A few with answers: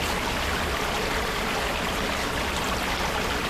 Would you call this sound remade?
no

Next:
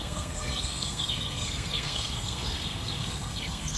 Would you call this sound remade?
yes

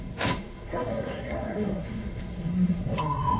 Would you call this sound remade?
yes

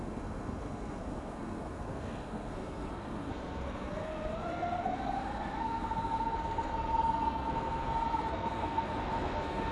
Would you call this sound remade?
yes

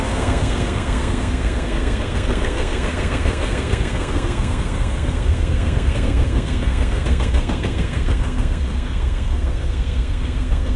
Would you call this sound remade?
yes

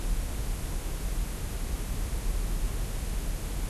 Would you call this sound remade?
no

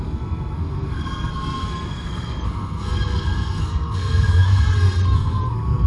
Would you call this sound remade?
yes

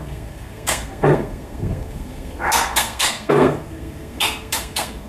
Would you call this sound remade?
yes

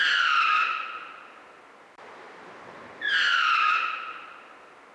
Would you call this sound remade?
no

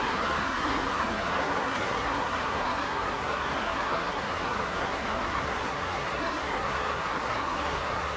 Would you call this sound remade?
yes